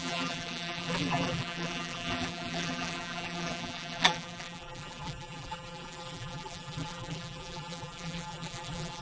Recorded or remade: remade